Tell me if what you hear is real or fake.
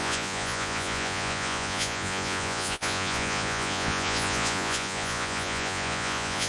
fake